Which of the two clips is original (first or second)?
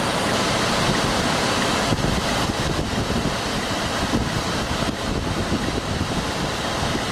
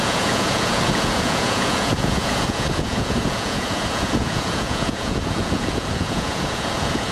first